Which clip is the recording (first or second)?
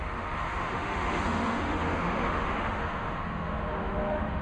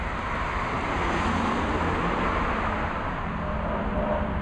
second